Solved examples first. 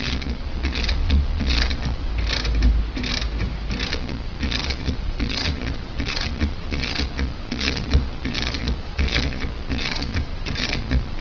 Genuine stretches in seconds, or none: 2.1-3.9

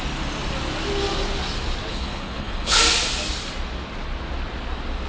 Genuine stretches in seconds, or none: 0.0-1.9; 2.8-5.1

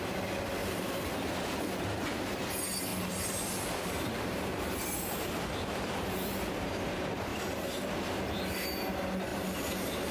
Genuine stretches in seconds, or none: 0.0-0.6; 2.4-2.9; 6.7-9.3